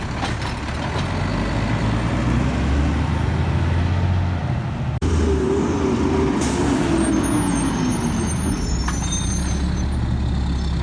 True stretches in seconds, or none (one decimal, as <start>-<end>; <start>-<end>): 0.0-10.8